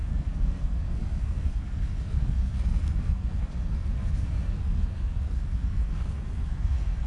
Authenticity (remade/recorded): remade